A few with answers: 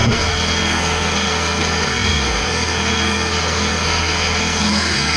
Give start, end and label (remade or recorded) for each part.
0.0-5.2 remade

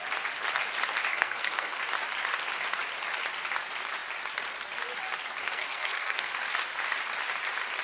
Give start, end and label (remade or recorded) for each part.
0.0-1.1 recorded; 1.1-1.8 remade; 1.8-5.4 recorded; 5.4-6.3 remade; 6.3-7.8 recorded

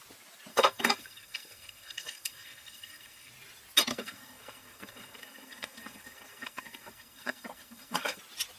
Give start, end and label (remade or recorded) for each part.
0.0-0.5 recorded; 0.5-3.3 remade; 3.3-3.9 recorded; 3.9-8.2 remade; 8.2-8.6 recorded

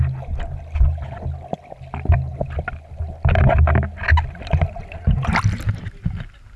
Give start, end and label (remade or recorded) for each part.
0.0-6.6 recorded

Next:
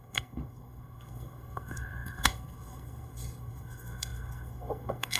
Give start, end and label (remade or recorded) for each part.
0.0-5.2 remade